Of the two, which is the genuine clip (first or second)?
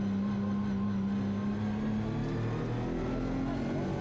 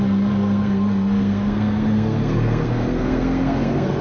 first